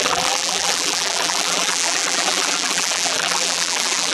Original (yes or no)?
no